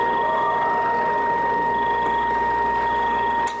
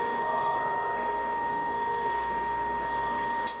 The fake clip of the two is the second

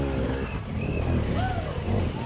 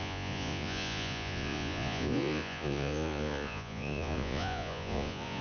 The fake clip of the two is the second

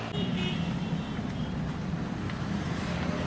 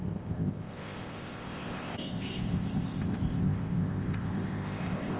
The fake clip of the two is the second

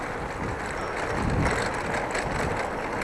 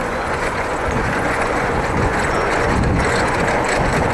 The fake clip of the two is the second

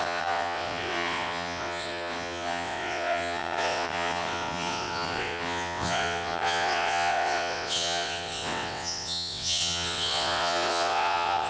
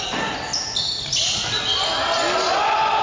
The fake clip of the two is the first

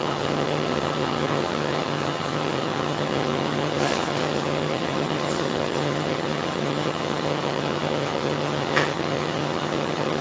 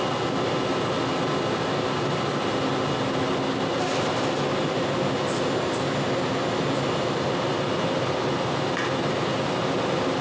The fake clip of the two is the first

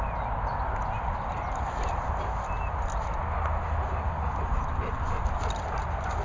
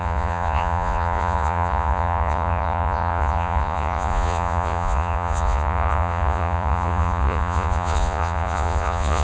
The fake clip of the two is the second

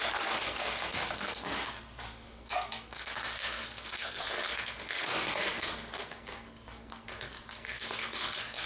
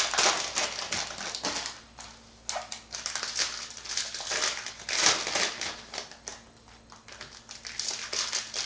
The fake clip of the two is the first